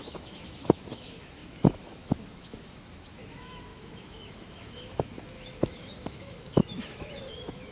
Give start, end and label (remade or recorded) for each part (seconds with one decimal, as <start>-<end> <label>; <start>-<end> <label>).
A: 0.0-7.7 remade